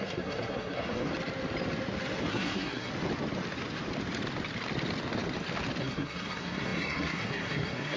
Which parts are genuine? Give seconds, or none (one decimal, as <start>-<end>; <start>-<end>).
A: 1.1-2.3; 2.9-5.8